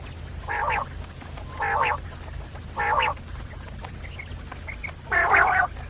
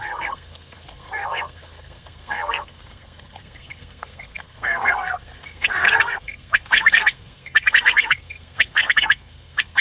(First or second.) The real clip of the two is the first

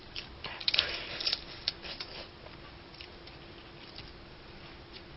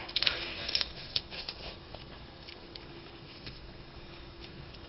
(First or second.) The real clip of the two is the first